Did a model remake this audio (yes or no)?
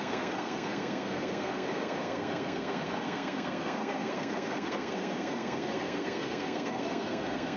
yes